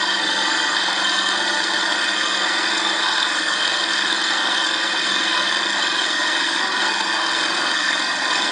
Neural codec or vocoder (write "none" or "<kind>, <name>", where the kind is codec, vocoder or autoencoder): codec, SNAC